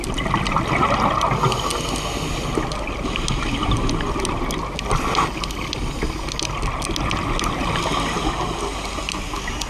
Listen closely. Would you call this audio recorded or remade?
recorded